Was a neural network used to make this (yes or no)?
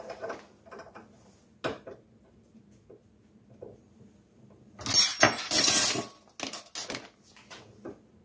no